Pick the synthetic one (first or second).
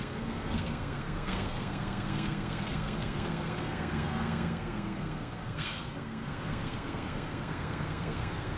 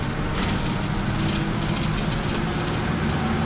first